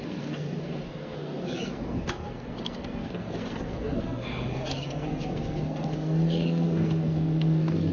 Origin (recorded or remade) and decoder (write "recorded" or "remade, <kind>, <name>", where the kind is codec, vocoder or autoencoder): remade, codec, SNAC